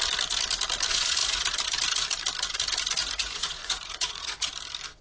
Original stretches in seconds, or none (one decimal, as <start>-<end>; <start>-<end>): 0.0-3.0; 4.5-5.0